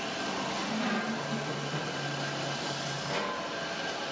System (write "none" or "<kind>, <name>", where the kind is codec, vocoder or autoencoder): none